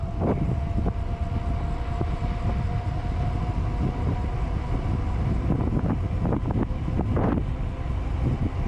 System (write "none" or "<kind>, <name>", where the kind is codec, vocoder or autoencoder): none